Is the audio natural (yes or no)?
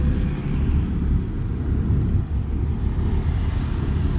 yes